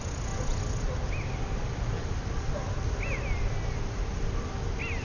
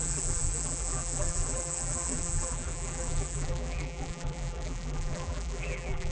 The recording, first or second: first